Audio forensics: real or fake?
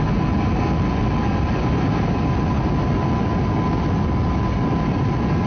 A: real